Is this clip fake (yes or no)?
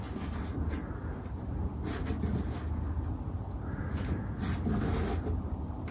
no